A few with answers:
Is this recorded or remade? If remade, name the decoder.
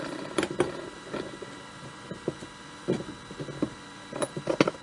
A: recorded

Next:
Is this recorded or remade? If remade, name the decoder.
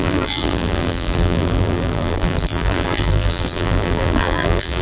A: remade, vocoder, BigVGAN v2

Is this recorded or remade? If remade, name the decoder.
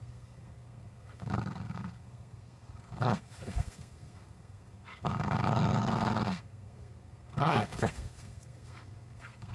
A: remade, codec, SNAC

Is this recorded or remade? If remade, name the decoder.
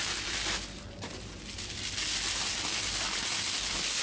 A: recorded